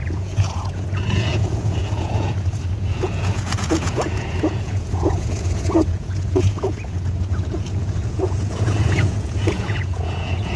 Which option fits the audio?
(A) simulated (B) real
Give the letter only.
A